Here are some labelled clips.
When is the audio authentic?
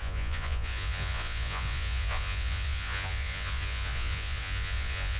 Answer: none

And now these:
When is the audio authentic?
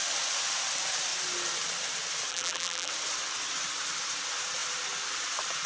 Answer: 0.0-2.3; 2.9-5.7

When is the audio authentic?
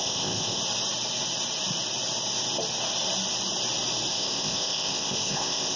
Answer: 0.6-4.1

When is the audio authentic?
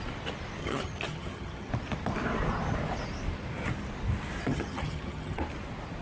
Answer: 0.0-0.6; 1.7-4.5; 5.4-6.0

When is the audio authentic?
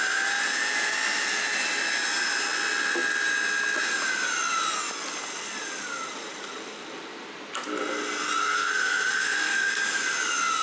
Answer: 0.0-8.4; 9.7-10.6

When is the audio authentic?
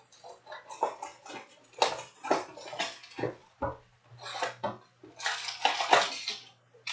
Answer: 0.0-6.9